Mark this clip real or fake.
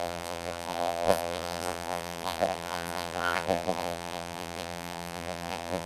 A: fake